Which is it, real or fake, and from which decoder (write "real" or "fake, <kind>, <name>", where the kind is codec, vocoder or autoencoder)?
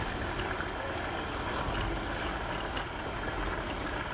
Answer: real